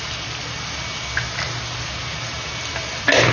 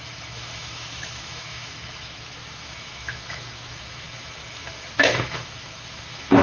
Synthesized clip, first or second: second